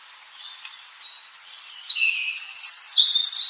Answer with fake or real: real